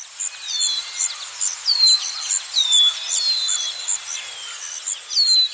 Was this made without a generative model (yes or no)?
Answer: yes